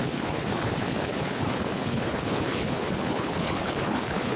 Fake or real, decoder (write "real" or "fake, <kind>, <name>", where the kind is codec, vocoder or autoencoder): fake, codec, HILCodec